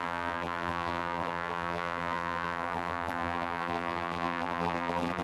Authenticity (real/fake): fake